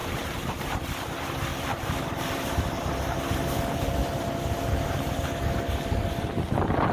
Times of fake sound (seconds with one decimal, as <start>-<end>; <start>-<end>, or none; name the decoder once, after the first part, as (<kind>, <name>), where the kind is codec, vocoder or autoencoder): 0.0-1.1 (vocoder, BigVGAN v2); 1.5-3.6; 4.0-5.4